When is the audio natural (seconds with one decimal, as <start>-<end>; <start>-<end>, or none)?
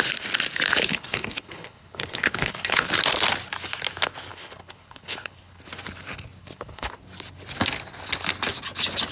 0.0-0.9; 2.9-4.3; 5.6-6.4; 7.0-9.1